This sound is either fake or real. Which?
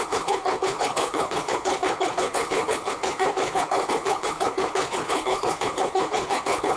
fake